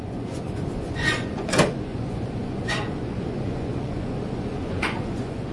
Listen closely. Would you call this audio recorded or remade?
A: remade